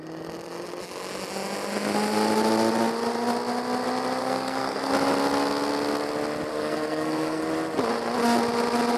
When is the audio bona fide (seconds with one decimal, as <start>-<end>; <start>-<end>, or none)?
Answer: 0.0-4.2; 4.9-6.5; 7.4-9.0